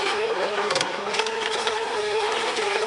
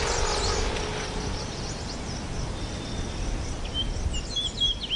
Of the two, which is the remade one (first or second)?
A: first